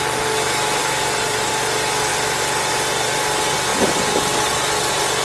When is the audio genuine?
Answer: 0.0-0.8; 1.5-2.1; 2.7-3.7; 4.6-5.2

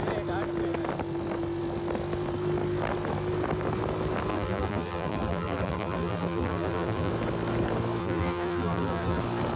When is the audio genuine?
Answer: 0.0-4.3; 7.1-8.0; 9.2-9.6

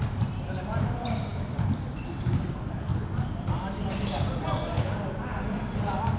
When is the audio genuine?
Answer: 0.0-6.2